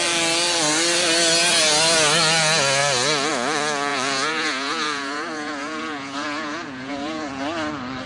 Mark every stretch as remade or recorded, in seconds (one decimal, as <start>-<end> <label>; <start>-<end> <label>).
0.0-3.9 recorded; 3.9-7.3 remade; 7.3-8.1 recorded